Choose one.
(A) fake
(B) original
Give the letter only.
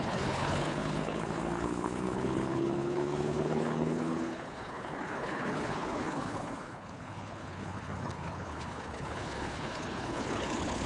A